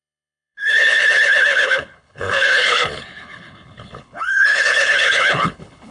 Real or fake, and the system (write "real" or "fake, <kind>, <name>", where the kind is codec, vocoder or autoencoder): fake, codec, HILCodec